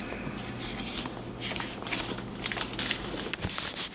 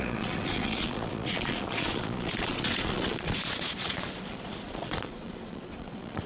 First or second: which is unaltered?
first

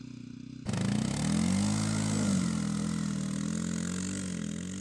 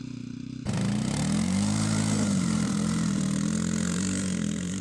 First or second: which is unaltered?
first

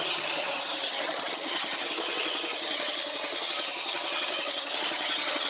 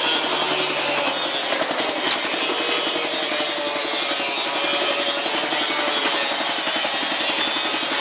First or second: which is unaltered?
second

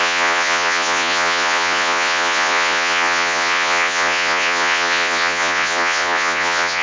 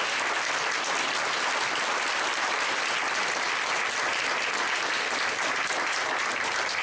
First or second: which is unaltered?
second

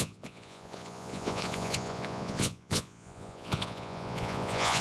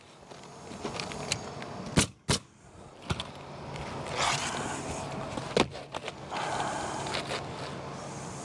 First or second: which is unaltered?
second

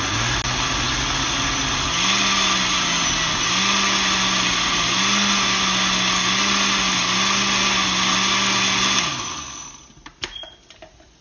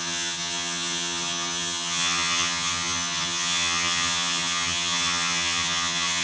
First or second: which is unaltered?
first